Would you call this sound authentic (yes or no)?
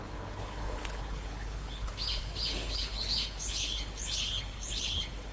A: no